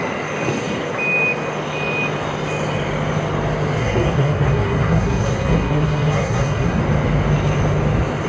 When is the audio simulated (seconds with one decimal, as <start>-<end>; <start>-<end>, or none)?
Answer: 3.8-6.8

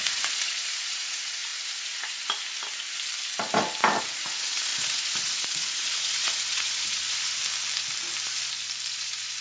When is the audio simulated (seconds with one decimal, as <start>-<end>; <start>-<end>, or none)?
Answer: 0.0-1.5; 4.0-7.4; 8.9-9.4

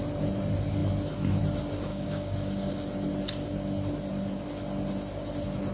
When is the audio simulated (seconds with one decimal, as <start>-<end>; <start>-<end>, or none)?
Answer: 1.9-2.7

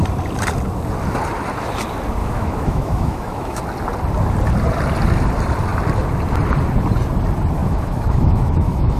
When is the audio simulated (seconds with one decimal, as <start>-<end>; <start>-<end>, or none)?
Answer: 2.2-3.6; 7.6-9.0